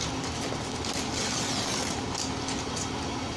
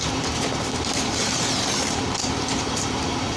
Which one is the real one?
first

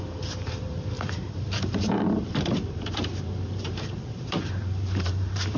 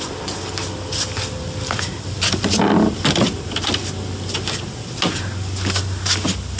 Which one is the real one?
second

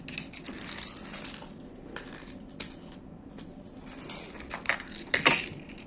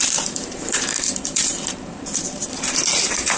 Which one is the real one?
first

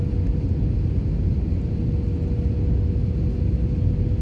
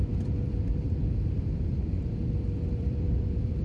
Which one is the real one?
first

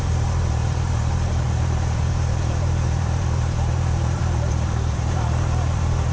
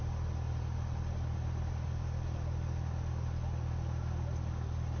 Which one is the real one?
second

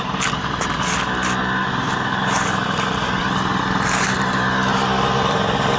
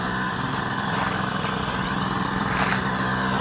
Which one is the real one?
first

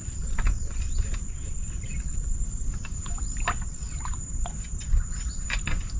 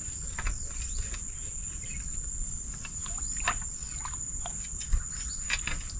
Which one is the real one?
second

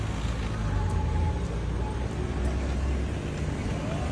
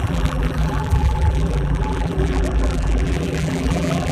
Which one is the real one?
first